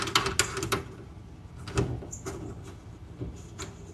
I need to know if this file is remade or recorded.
recorded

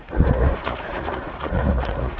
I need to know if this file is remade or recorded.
remade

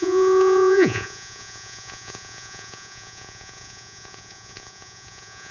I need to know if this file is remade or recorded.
remade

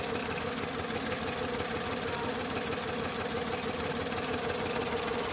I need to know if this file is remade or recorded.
recorded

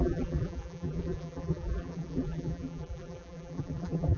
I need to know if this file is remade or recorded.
remade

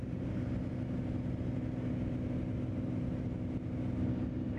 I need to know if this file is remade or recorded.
recorded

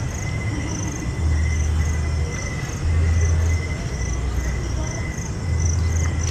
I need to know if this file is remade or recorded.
recorded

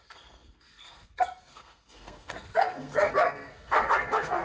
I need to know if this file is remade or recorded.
remade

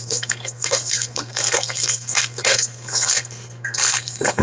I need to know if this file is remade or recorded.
remade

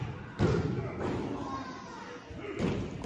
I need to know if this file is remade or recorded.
recorded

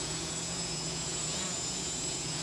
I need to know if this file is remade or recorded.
remade